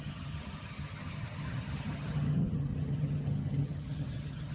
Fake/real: fake